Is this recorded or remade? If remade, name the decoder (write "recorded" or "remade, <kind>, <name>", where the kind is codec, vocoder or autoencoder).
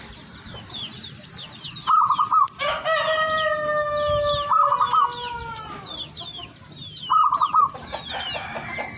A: recorded